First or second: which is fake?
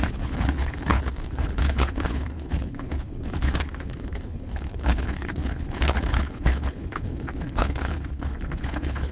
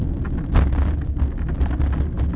first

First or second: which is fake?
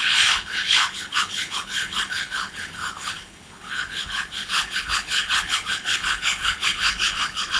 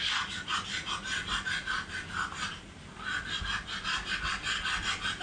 first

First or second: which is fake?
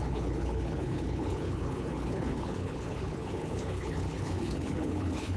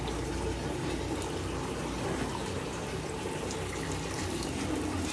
first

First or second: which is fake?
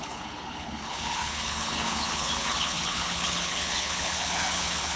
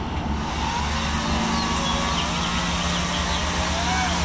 first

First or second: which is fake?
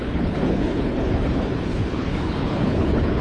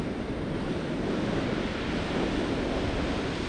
first